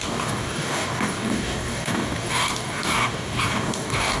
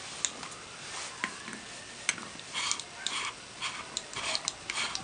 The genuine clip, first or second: second